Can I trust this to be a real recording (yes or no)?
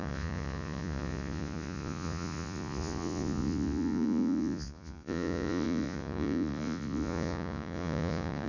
no